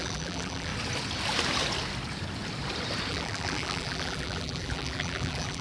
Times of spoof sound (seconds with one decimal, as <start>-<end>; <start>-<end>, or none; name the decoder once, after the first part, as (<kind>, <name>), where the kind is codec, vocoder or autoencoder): 0.0-0.7 (vocoder, BigVGAN v2); 3.1-5.6

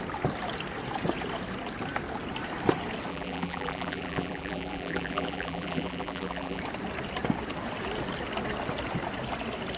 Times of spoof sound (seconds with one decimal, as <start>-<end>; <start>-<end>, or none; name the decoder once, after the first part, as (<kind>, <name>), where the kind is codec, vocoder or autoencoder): 3.1-6.6 (vocoder, BigVGAN v2)

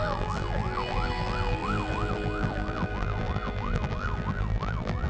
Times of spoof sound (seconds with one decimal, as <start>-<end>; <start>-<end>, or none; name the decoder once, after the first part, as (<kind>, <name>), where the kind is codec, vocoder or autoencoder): 0.0-5.1 (vocoder, BigVGAN v2)

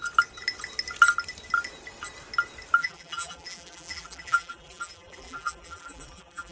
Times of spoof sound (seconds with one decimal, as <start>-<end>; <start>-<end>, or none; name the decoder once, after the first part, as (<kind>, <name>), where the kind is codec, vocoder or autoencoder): 2.8-6.5 (vocoder, BigVGAN v2)